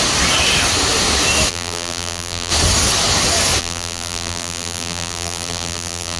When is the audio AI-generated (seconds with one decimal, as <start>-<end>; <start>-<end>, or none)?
1.5-2.5; 3.6-6.2